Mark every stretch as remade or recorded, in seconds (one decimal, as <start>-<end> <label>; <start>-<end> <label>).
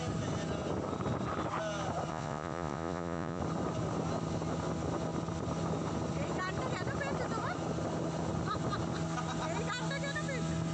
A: 0.0-2.1 recorded; 2.1-3.4 remade; 3.4-10.7 recorded